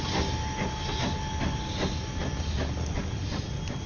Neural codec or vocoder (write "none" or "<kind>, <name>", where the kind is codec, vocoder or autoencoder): none